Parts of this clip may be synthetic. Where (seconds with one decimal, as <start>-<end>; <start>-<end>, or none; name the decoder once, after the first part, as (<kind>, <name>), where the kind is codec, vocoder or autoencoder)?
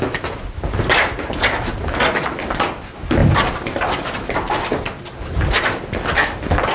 3.2-5.0 (vocoder, BigVGAN v2)